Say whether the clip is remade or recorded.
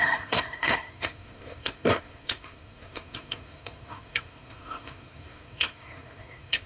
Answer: remade